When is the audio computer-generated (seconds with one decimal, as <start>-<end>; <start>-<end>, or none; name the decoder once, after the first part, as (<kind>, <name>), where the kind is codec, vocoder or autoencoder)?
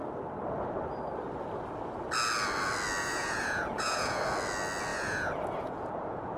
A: 3.0-4.2 (vocoder, Vocos); 4.9-6.4